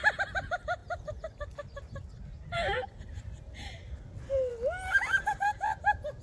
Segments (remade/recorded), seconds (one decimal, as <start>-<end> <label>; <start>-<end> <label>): 0.0-6.2 recorded